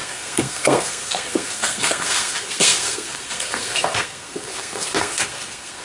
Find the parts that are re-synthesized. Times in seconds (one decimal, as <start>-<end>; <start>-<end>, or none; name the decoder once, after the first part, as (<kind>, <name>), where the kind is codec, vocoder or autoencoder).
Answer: 0.0-5.8 (codec, SNAC)